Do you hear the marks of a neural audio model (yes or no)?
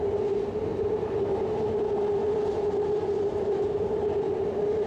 no